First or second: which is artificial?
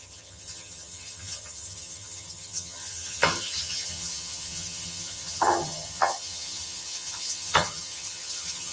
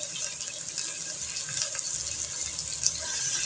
first